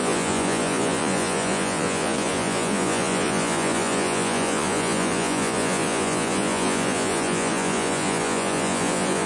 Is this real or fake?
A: fake